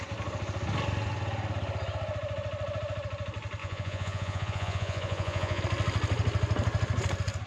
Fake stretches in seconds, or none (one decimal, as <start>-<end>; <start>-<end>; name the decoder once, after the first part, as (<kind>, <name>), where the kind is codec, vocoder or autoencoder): 3.6-5.6 (vocoder, Vocos)